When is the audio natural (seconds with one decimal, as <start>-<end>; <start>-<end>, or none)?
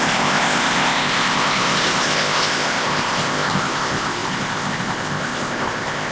none